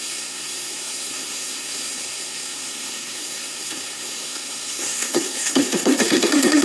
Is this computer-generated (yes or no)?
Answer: yes